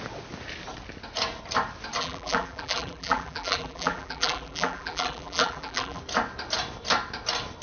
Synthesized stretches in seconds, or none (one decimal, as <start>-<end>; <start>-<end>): 2.0-6.0